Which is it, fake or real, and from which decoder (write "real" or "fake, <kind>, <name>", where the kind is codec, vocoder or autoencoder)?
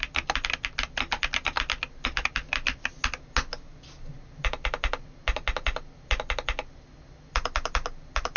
real